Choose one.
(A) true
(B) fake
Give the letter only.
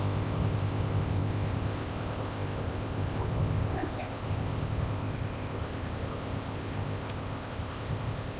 B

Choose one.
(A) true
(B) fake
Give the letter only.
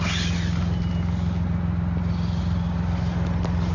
A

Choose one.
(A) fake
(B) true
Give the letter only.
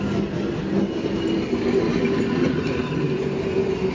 B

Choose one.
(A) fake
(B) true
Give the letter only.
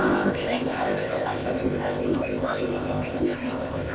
A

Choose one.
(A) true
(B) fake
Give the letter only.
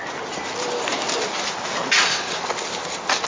A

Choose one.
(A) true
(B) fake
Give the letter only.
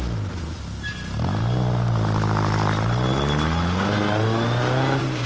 A